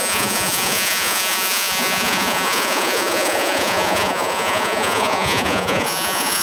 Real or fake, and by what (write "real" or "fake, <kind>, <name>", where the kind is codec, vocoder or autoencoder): fake, vocoder, Vocos